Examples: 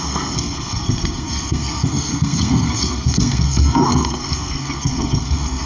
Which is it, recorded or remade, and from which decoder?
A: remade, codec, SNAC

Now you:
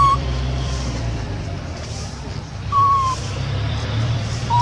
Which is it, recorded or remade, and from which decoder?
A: remade, vocoder, BigVGAN v2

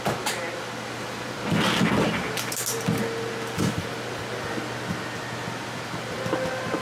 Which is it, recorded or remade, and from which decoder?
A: recorded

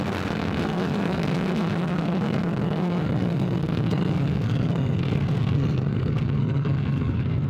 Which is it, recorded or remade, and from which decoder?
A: remade, codec, SNAC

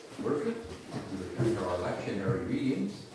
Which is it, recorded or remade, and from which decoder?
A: recorded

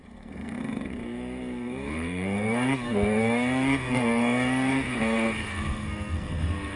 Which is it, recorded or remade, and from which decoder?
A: remade, codec, SNAC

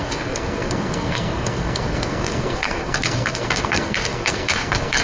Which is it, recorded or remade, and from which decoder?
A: remade, codec, SNAC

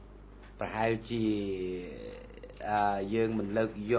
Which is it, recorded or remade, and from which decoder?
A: recorded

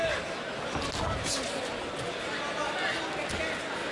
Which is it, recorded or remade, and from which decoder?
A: recorded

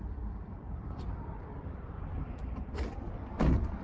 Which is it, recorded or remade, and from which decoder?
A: remade, vocoder, BigVGAN v2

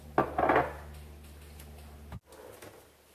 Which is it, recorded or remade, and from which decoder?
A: recorded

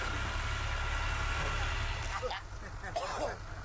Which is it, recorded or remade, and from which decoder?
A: recorded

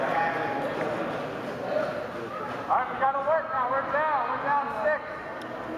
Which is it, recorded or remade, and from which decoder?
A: recorded